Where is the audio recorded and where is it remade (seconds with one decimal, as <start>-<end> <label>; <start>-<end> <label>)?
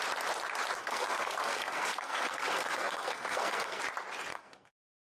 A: 0.0-0.8 recorded; 0.8-3.8 remade; 3.8-4.3 recorded; 4.3-5.0 remade